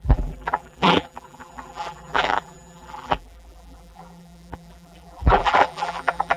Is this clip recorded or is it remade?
remade